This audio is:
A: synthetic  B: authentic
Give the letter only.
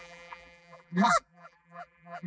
A